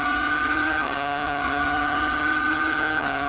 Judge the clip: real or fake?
fake